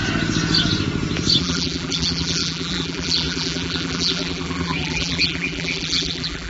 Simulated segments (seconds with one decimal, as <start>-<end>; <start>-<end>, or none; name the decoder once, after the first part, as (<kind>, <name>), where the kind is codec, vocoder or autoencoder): 1.4-6.5 (vocoder, BigVGAN v2)